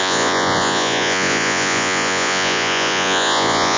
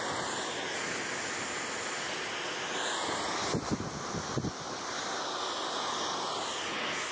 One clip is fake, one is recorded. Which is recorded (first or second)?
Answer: second